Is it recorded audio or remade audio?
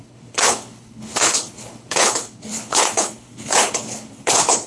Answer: remade